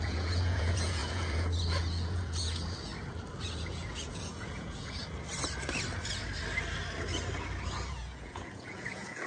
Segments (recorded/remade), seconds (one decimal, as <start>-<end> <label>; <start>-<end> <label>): 0.0-2.9 remade; 2.9-3.4 recorded; 3.4-5.0 remade; 5.0-7.9 recorded; 7.9-9.3 remade